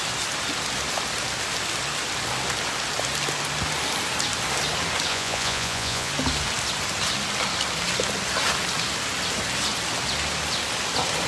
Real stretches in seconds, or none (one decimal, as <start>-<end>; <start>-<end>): 0.0-5.1; 6.1-11.3